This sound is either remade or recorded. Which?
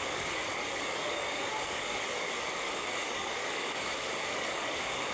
remade